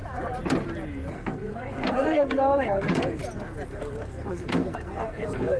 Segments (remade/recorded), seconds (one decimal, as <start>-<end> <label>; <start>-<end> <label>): 0.0-1.1 recorded; 1.1-3.2 remade; 3.2-3.7 recorded; 3.7-5.6 remade